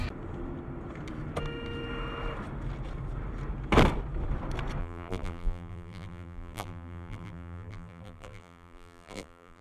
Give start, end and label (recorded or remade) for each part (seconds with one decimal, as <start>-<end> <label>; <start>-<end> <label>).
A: 0.0-4.8 recorded; 4.8-9.6 remade